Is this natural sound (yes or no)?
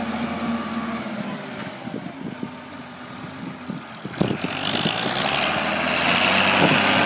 yes